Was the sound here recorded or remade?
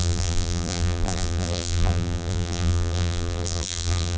remade